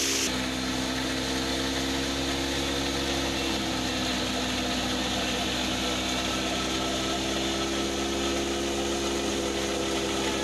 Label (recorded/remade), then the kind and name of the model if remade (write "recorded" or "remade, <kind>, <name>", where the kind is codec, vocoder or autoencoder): recorded